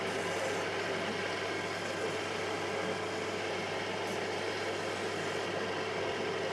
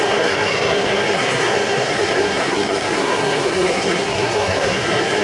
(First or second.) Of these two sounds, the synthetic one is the second